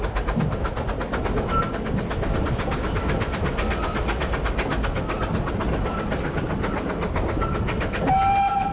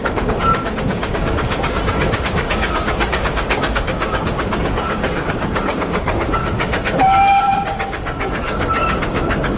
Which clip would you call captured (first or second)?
first